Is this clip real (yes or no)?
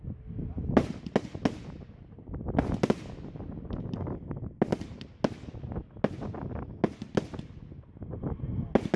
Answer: yes